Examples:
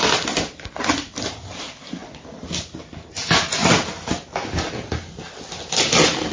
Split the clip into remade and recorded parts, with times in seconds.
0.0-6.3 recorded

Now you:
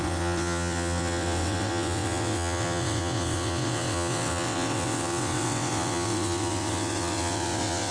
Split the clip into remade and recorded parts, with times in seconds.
0.0-7.9 remade

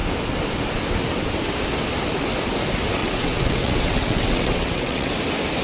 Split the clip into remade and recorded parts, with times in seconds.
0.0-3.0 recorded; 3.0-5.1 remade; 5.1-5.6 recorded

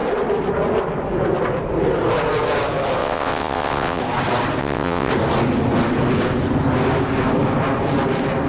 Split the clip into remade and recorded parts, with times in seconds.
0.0-3.0 recorded; 3.0-4.0 remade; 4.0-4.6 recorded; 4.6-5.1 remade; 5.1-8.5 recorded

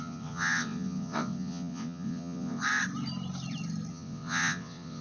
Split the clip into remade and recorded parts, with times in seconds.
0.0-2.6 remade; 2.6-3.9 recorded; 3.9-5.0 remade

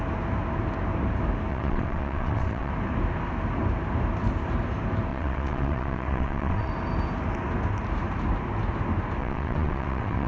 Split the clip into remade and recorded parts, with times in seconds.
0.0-1.5 recorded; 1.5-2.7 remade; 2.7-5.1 recorded; 5.1-6.7 remade; 6.7-9.2 recorded; 9.2-10.3 remade

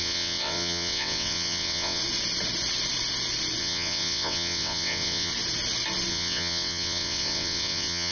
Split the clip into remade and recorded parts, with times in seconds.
0.0-2.0 remade; 2.0-3.6 recorded; 3.6-5.3 remade; 5.3-6.1 recorded; 6.1-8.1 remade

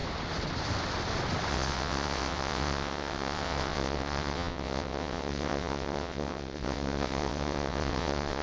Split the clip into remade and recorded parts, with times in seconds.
0.0-1.5 recorded; 1.5-8.4 remade